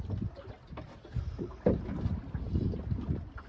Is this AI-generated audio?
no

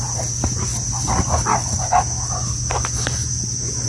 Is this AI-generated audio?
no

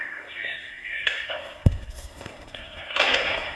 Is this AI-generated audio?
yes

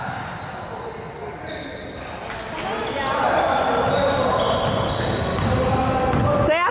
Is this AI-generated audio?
no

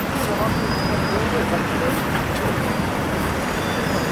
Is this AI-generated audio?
no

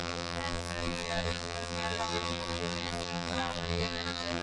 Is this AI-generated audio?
yes